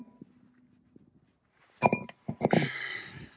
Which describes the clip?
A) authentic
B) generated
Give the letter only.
A